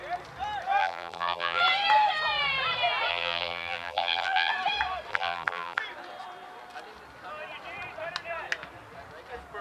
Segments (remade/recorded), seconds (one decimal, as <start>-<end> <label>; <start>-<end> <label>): 0.0-0.8 recorded; 0.8-1.6 remade; 1.6-3.1 recorded; 3.1-4.5 remade; 4.5-5.1 recorded; 5.1-5.8 remade; 5.8-9.6 recorded